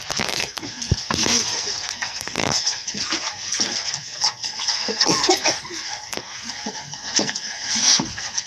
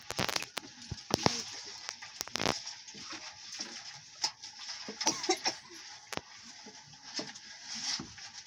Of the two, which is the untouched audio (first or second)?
second